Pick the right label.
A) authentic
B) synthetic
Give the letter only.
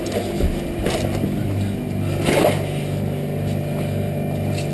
A